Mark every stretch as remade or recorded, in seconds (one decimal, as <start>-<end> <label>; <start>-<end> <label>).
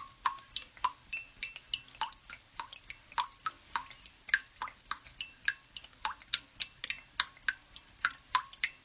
0.0-8.8 recorded